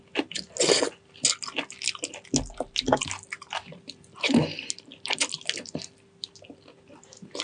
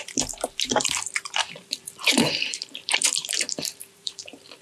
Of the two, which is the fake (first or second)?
second